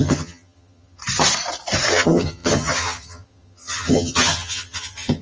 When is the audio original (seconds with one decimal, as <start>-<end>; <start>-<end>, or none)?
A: 1.0-1.9